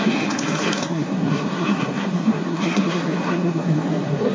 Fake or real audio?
fake